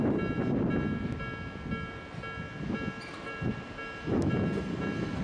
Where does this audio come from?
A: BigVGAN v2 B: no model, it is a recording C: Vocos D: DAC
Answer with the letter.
B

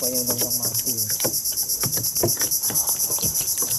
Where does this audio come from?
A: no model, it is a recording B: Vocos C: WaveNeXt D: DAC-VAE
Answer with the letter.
A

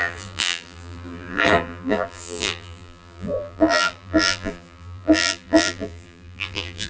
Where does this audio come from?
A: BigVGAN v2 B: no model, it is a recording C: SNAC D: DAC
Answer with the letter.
A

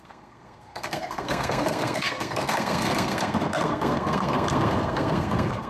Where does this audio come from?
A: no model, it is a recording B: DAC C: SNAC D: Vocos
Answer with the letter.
C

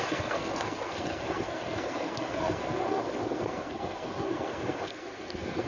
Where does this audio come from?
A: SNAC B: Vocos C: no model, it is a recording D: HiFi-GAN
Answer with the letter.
A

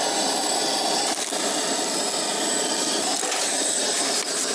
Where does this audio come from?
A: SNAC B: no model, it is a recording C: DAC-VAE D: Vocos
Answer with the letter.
B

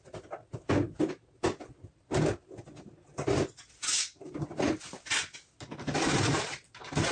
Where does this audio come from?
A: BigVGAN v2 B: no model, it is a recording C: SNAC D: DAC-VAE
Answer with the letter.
B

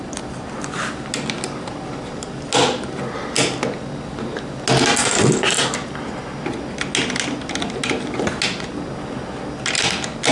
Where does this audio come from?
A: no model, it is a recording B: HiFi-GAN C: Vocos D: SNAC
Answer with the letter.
A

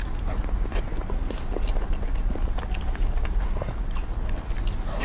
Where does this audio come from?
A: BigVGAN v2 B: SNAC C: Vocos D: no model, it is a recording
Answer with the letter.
D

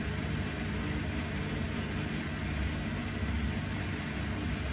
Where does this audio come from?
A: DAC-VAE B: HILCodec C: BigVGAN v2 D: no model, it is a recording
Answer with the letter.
D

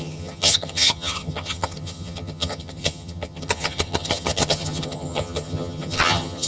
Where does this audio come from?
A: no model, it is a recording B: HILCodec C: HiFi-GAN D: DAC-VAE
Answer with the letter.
C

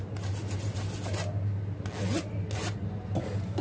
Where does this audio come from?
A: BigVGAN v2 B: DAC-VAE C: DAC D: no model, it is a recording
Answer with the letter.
D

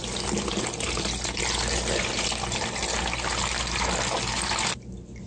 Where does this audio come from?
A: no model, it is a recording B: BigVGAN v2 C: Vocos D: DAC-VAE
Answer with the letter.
A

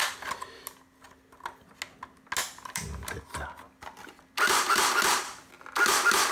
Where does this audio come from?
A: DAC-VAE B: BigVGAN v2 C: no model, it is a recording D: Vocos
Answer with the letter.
C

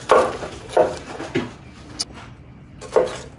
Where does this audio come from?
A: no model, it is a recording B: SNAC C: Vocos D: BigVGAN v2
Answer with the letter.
A